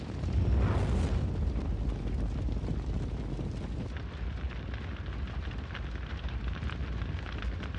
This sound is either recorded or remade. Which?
recorded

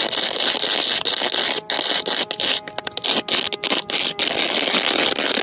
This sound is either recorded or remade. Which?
recorded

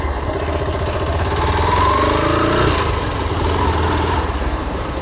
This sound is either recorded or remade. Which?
recorded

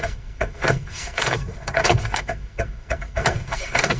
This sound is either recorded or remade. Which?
remade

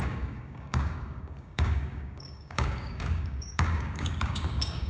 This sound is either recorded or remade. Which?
remade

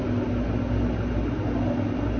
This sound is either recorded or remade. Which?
recorded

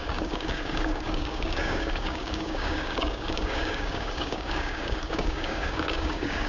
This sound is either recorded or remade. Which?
remade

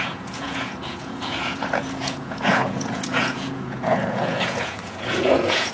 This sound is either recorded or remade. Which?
remade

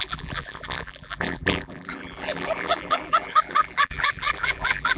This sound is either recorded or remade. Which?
remade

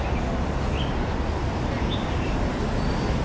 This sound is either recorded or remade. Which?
recorded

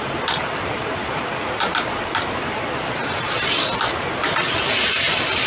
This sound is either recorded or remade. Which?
remade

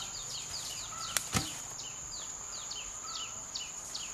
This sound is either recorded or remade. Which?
recorded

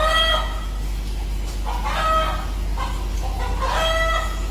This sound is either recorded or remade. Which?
recorded